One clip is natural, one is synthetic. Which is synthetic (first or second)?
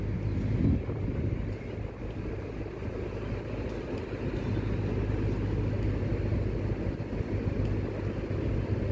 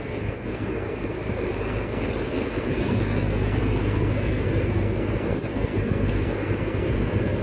second